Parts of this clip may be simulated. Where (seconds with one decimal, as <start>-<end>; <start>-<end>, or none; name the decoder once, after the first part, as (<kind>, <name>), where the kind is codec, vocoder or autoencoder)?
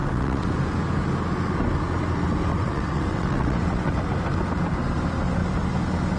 0.0-0.5 (vocoder, WaveNeXt); 2.5-4.0